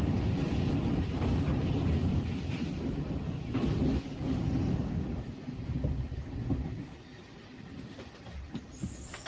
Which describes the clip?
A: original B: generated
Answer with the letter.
A